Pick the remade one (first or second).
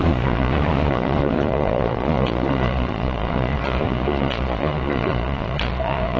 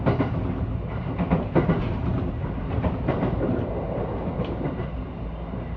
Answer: first